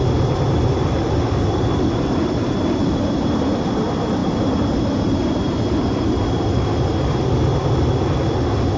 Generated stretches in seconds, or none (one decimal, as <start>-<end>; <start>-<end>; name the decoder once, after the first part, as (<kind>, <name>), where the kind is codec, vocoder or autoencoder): 0.0-2.2 (vocoder, BigVGAN v2); 2.8-8.8